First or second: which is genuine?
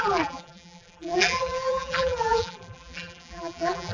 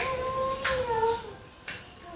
second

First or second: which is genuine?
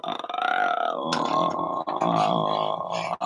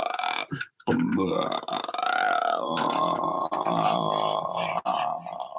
first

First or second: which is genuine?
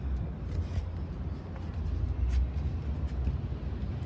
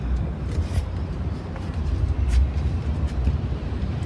first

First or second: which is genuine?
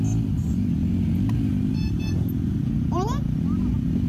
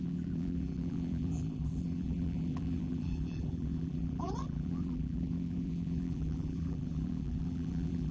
first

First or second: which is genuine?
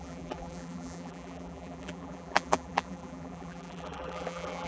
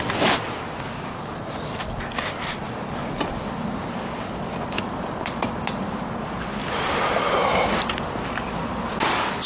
second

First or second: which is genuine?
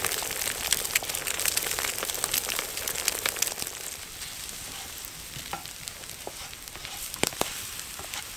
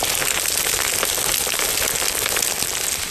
second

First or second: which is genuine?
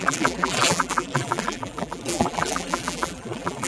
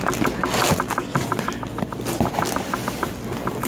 second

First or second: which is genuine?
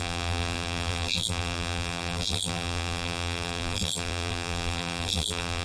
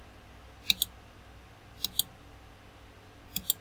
second